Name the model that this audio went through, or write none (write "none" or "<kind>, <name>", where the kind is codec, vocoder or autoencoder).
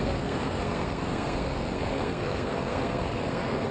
codec, SNAC